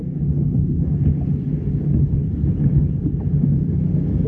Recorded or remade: recorded